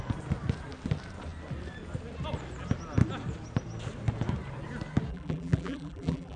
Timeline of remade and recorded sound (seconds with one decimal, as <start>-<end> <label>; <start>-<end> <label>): 0.0-5.1 recorded; 5.1-6.4 remade